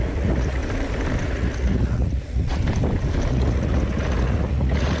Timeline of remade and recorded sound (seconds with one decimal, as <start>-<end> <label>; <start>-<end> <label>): 0.0-0.6 remade; 0.6-1.2 recorded; 1.2-2.6 remade; 2.6-3.3 recorded; 3.3-5.0 remade